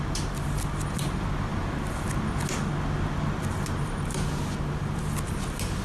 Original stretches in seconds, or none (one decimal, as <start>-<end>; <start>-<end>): 0.0-5.8